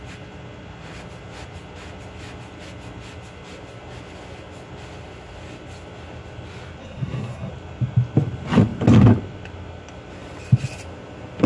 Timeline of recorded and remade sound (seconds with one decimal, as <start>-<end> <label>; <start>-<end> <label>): 0.0-6.8 recorded; 6.8-7.5 remade; 7.5-11.5 recorded